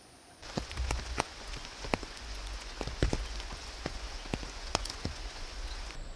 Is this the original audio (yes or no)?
no